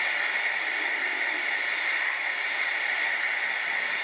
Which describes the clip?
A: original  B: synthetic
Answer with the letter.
B